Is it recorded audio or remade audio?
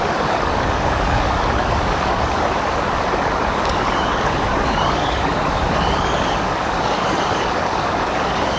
remade